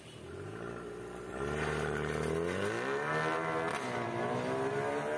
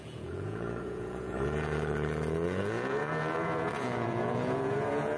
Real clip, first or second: first